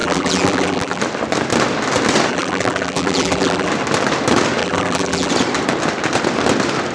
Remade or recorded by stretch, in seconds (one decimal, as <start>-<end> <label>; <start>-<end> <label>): 0.0-1.0 remade; 1.0-2.3 recorded; 2.3-3.7 remade; 3.7-4.6 recorded; 4.6-5.3 remade; 5.3-6.9 recorded